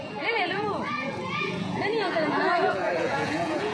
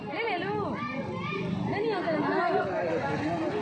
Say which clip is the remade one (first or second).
first